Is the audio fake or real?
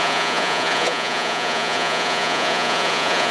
fake